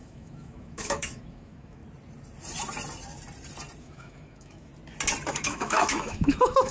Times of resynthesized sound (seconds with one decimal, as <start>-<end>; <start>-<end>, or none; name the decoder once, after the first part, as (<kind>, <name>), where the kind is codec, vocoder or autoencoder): 0.0-1.8 (autoencoder, DAC-VAE); 3.8-4.7; 5.3-6.7